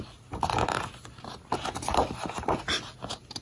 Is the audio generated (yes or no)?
no